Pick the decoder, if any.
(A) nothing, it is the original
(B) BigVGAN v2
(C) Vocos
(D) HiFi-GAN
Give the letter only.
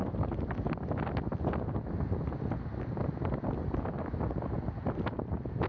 A